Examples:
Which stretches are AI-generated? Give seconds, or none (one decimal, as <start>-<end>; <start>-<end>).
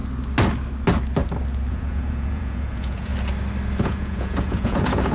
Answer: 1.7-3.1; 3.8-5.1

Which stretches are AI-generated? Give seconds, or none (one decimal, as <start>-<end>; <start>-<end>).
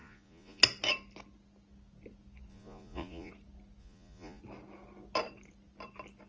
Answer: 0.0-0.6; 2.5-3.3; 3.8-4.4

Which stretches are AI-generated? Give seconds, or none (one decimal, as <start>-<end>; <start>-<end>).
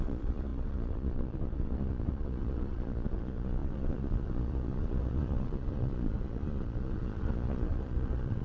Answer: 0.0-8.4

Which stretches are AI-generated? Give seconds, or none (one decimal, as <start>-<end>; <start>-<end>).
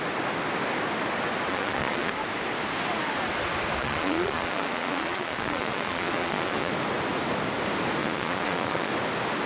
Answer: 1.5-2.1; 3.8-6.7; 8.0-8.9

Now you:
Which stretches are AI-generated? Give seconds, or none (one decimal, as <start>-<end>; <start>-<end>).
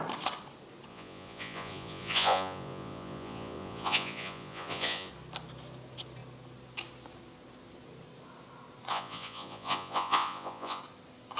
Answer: 0.9-5.1; 8.9-10.8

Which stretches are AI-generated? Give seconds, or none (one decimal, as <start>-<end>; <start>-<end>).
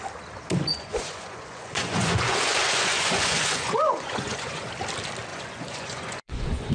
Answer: 0.7-4.7; 5.3-6.7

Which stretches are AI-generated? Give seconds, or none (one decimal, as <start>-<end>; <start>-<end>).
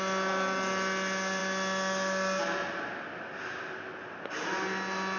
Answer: none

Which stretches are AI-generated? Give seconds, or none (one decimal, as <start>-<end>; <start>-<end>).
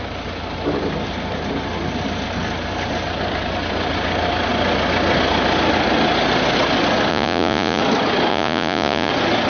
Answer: 7.1-7.8; 8.3-9.1